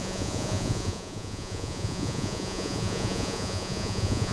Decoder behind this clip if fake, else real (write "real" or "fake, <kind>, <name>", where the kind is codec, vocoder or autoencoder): fake, vocoder, Vocos